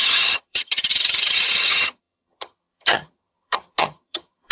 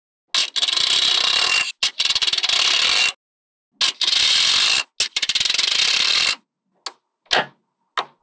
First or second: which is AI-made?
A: first